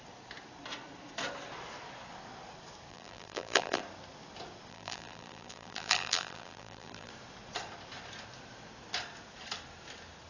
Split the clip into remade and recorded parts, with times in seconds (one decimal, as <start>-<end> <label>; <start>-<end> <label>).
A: 0.0-2.9 recorded; 2.9-3.8 remade; 3.8-4.7 recorded; 4.7-7.1 remade; 7.1-10.3 recorded